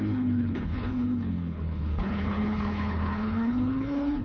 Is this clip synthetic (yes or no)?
yes